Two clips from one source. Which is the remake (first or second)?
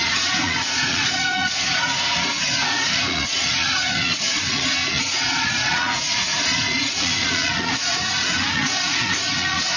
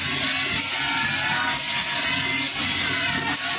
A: first